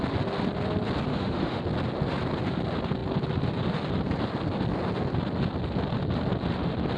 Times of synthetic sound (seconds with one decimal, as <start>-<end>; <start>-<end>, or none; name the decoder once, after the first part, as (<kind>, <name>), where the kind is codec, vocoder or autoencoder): 1.1-1.6 (autoencoder, DAC-VAE)